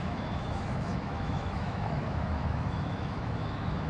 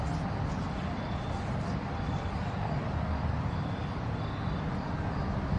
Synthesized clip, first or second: first